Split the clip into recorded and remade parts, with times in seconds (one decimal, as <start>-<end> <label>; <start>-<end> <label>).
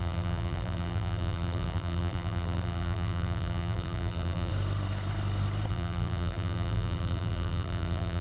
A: 0.0-4.5 remade; 4.5-5.7 recorded; 5.7-8.2 remade